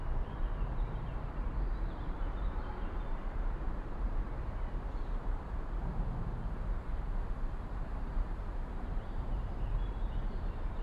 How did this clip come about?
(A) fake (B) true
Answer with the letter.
A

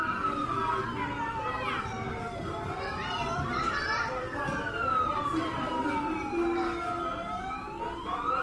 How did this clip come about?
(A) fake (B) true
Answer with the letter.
B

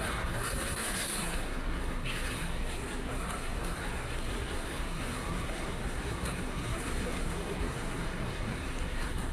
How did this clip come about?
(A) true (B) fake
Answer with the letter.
B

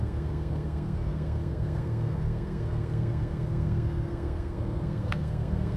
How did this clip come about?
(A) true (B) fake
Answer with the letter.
B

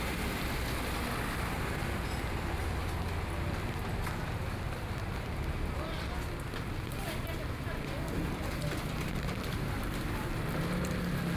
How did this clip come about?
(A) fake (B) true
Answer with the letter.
B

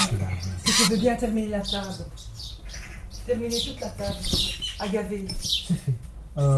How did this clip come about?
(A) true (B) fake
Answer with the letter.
A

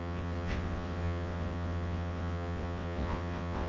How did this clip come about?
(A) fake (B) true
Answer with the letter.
A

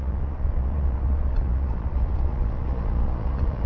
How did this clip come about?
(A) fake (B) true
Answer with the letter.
A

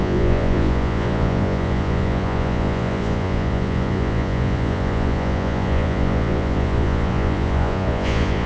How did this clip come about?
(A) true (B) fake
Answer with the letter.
B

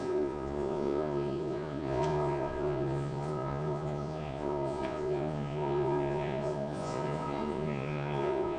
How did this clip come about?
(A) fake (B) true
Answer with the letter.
A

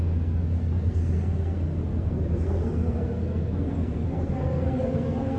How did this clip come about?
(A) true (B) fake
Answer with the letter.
B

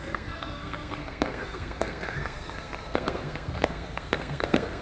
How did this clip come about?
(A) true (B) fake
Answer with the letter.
B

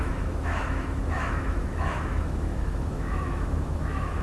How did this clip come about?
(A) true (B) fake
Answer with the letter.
B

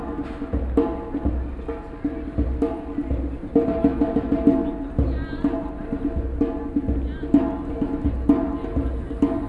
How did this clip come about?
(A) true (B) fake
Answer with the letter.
A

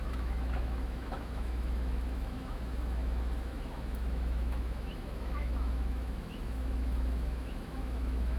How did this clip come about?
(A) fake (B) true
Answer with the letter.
A